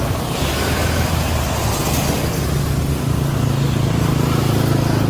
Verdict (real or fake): real